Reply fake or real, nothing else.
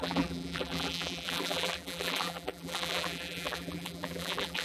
fake